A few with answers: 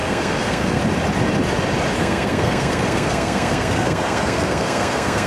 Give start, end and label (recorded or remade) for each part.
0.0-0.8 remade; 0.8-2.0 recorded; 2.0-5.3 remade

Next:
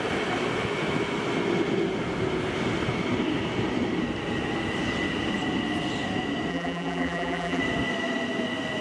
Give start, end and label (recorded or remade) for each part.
0.0-6.5 recorded; 6.5-7.6 remade; 7.6-8.8 recorded

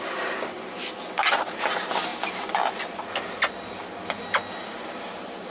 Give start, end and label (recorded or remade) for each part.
0.0-5.5 recorded

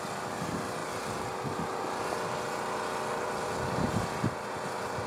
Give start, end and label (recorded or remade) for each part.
0.0-5.1 recorded